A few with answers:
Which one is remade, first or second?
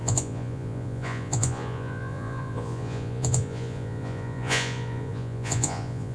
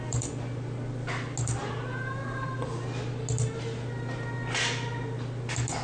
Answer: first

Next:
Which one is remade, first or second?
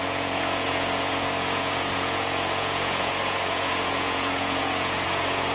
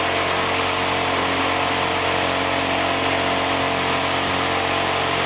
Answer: first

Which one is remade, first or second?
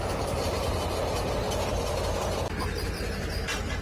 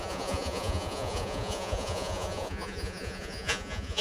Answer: second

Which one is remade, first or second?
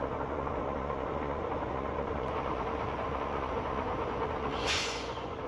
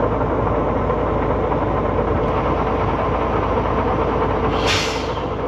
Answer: first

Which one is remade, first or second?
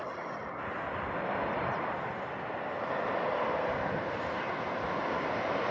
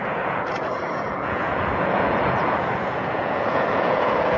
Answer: second